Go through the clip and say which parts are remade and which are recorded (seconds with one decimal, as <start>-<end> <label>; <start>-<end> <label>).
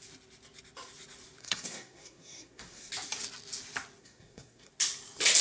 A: 0.0-1.4 recorded; 1.4-2.9 remade; 2.9-4.0 recorded; 4.0-4.7 remade; 4.7-5.4 recorded